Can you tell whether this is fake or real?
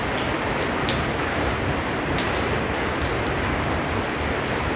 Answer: real